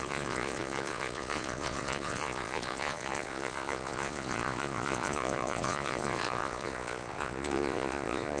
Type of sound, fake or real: fake